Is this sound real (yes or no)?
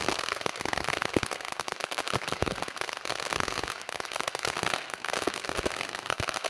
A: no